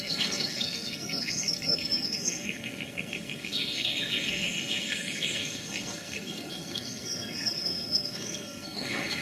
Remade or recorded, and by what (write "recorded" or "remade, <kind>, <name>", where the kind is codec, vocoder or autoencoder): remade, codec, SNAC